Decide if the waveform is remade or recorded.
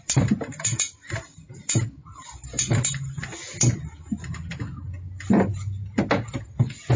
recorded